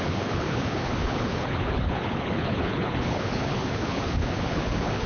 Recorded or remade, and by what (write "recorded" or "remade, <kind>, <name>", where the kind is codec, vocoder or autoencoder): remade, codec, HILCodec